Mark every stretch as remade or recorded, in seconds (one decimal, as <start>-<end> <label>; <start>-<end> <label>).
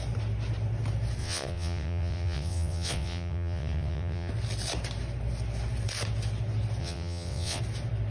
0.0-1.2 recorded; 1.2-4.3 remade; 4.3-6.8 recorded; 6.8-7.6 remade; 7.6-8.1 recorded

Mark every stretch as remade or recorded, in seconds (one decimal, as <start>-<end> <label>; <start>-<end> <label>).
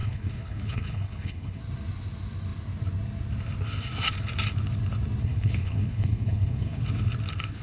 0.0-1.6 remade; 1.6-5.2 recorded; 5.2-6.8 remade; 6.8-7.6 recorded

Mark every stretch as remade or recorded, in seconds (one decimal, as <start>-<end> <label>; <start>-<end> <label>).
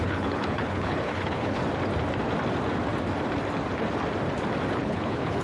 0.0-1.6 remade; 1.6-4.8 recorded; 4.8-5.4 remade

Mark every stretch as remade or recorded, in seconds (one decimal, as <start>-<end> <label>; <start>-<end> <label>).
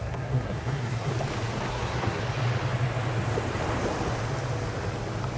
0.0-1.1 remade; 1.1-1.7 recorded; 1.7-2.2 remade; 2.2-5.4 recorded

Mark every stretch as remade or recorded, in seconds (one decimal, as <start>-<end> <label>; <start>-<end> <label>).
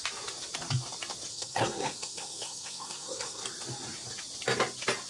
0.0-1.3 recorded; 1.3-3.4 remade; 3.4-5.1 recorded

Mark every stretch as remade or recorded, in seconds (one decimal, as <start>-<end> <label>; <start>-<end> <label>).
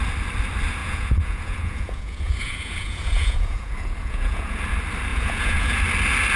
0.0-0.8 recorded; 0.8-4.6 remade; 4.6-5.1 recorded; 5.1-5.8 remade; 5.8-6.4 recorded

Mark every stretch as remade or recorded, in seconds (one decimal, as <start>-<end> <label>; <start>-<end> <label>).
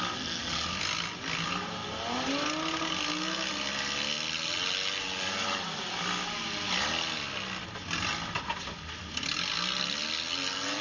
0.0-10.8 recorded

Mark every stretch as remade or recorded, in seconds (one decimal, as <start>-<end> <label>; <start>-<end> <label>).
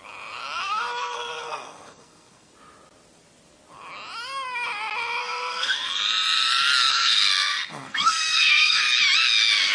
0.0-0.6 recorded; 0.6-2.5 remade; 2.5-5.2 recorded; 5.2-6.0 remade; 6.0-6.9 recorded; 6.9-8.8 remade; 8.8-9.7 recorded